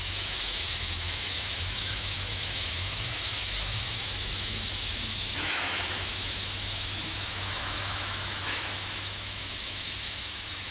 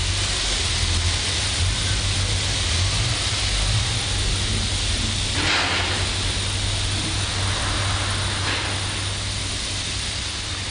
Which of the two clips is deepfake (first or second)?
first